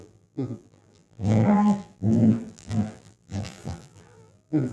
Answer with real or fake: fake